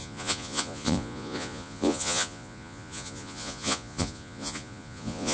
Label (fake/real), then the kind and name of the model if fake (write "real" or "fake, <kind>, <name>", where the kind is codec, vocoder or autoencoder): fake, vocoder, Vocos